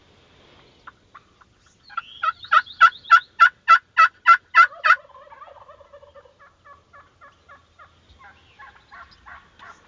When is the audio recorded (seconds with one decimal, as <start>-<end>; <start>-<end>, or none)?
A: 0.0-9.9